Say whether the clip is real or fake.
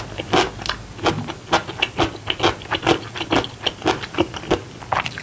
real